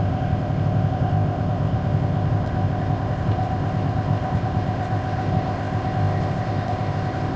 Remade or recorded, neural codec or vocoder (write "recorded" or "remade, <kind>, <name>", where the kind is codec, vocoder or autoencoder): remade, codec, ZipCodec